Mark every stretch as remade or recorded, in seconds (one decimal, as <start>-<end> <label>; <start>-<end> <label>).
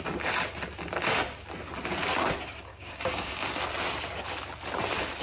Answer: 0.0-2.7 recorded; 2.7-3.6 remade; 3.6-5.2 recorded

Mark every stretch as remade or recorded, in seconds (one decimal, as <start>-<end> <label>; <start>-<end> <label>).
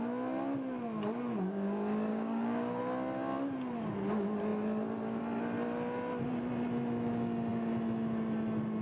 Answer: 0.0-2.1 recorded; 2.1-2.8 remade; 2.8-8.8 recorded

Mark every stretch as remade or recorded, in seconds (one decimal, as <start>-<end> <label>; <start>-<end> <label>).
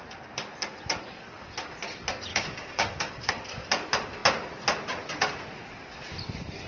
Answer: 0.0-2.3 recorded; 2.3-3.3 remade; 3.3-6.7 recorded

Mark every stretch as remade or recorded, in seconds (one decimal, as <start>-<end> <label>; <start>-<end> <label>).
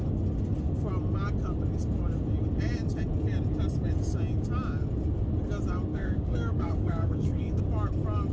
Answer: 0.0-5.9 recorded; 5.9-7.6 remade; 7.6-8.3 recorded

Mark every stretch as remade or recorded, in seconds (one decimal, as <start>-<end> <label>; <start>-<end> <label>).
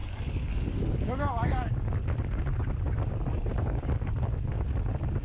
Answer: 0.0-1.9 remade; 1.9-3.5 recorded; 3.5-4.1 remade; 4.1-5.2 recorded